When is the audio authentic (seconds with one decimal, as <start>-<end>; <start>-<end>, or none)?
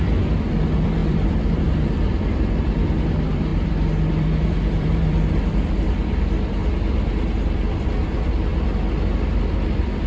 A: 6.6-7.4; 8.5-9.3